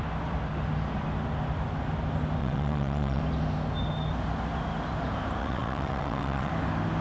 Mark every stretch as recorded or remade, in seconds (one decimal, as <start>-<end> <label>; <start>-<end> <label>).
0.0-2.4 recorded; 2.4-3.2 remade; 3.2-5.4 recorded; 5.4-6.5 remade; 6.5-7.0 recorded